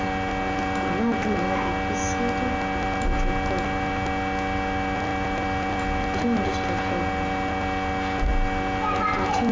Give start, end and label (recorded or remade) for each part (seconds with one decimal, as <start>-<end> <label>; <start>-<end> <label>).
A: 0.0-9.5 recorded